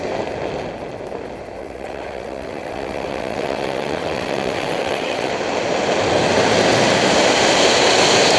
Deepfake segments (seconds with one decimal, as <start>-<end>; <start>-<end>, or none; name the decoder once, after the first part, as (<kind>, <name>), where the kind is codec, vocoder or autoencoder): 1.6-5.3 (vocoder, WaveNeXt)